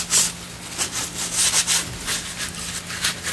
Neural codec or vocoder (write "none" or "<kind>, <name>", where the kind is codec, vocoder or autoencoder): none